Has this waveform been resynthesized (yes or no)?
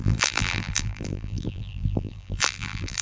yes